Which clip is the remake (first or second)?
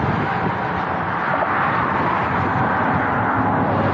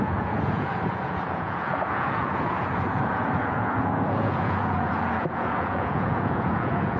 second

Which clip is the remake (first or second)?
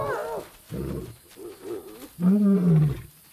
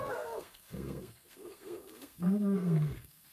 second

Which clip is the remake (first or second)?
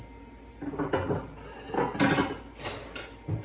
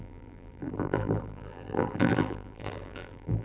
second